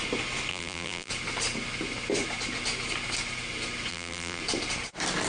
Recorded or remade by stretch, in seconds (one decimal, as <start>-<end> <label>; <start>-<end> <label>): 0.0-0.5 recorded; 0.5-1.1 remade; 1.1-3.9 recorded; 3.9-4.4 remade; 4.4-5.3 recorded